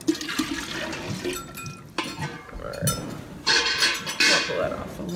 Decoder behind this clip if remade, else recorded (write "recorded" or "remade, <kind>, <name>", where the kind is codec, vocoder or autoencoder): recorded